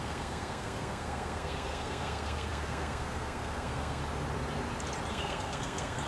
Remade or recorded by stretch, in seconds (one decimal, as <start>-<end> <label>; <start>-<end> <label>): 0.0-4.0 remade; 4.0-5.1 recorded; 5.1-6.1 remade